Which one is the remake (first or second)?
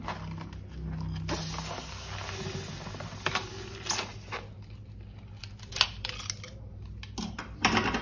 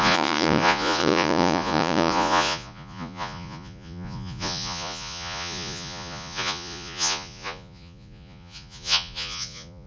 second